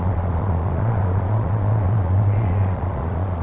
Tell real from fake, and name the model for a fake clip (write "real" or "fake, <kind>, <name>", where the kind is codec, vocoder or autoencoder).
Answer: fake, vocoder, Vocos